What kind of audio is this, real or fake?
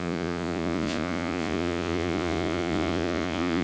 fake